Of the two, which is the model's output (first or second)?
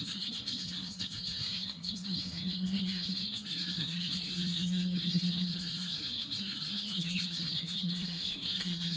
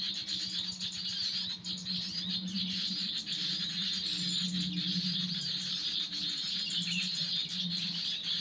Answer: first